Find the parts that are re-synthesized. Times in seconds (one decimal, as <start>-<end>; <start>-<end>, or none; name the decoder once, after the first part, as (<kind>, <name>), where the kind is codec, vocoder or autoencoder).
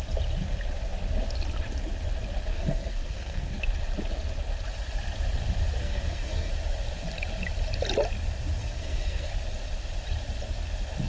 2.5-3.6 (codec, SNAC); 5.8-6.5; 8.6-9.3